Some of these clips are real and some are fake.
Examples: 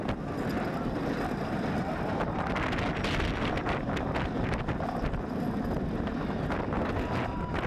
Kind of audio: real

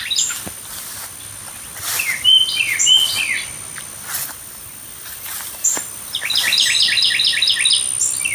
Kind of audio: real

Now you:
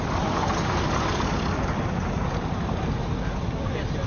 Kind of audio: real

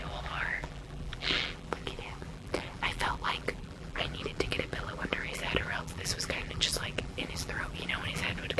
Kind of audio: fake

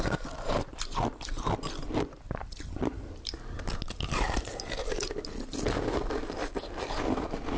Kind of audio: real